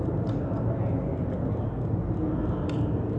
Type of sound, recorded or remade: recorded